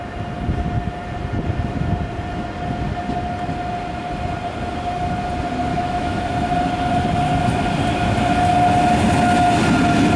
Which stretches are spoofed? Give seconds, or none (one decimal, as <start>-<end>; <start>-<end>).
5.7-6.3